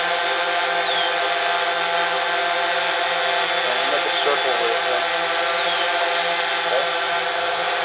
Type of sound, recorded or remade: recorded